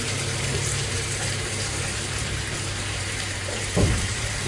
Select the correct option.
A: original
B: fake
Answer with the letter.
B